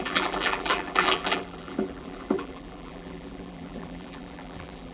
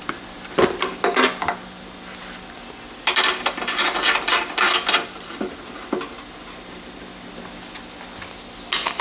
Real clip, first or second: second